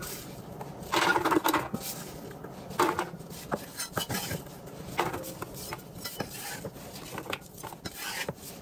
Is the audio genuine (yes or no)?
yes